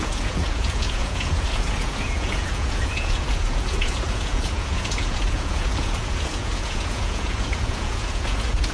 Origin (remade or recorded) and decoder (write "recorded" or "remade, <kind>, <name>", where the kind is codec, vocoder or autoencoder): remade, vocoder, Vocos